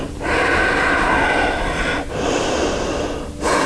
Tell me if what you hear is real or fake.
real